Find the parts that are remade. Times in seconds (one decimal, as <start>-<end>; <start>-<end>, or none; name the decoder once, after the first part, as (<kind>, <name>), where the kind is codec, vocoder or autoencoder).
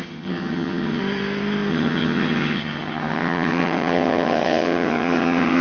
0.0-1.0 (vocoder, HiFi-GAN); 1.7-5.6